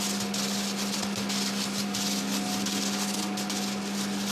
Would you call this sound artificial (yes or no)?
no